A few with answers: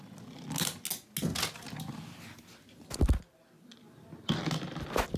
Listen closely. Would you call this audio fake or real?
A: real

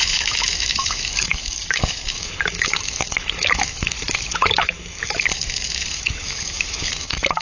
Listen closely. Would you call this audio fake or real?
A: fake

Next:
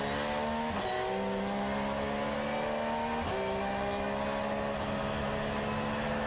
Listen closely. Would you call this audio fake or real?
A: real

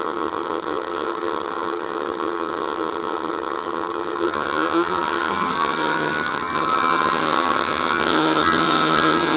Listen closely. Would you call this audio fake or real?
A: fake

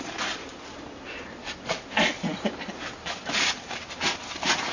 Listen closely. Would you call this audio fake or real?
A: real